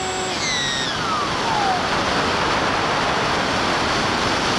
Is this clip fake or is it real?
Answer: real